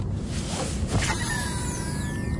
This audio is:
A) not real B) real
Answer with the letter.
B